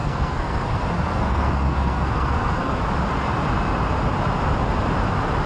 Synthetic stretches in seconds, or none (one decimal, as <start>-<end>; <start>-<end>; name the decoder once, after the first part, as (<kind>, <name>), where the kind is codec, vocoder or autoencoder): 0.0-2.8 (codec, SNAC)